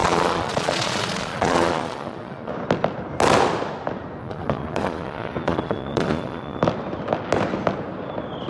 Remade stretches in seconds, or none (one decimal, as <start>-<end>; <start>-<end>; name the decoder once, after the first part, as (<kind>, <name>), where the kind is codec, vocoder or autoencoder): 0.0-2.5 (vocoder, Vocos); 4.2-6.6